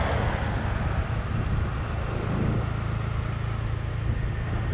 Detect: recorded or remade recorded